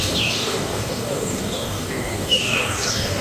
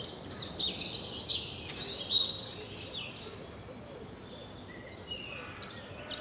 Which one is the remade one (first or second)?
first